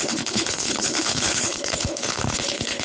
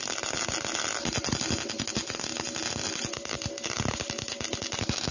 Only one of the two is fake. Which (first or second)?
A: first